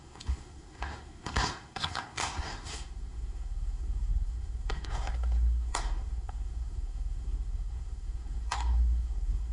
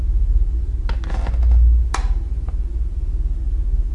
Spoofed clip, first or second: first